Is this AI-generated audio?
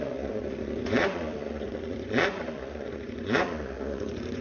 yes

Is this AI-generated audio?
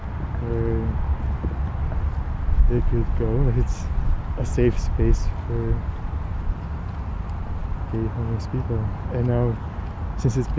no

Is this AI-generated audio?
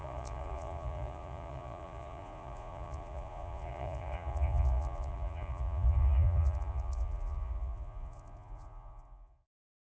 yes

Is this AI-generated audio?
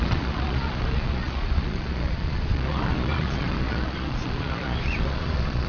yes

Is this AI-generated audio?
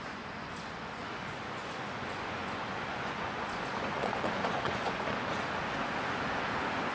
yes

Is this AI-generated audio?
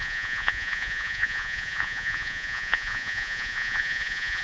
yes